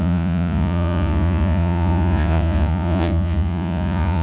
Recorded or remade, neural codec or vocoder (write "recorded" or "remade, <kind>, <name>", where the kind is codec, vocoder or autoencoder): remade, vocoder, Vocos